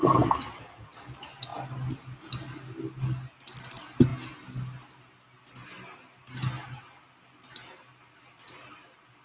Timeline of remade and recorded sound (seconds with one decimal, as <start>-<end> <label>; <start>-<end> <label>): 0.0-9.2 recorded